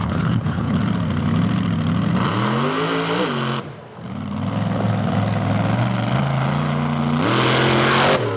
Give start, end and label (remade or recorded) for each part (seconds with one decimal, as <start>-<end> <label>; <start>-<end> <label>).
0.0-0.8 remade; 0.8-8.4 recorded